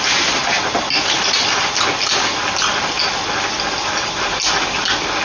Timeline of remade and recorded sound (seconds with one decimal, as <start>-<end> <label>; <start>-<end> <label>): 0.0-5.2 recorded